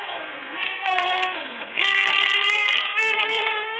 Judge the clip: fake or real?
fake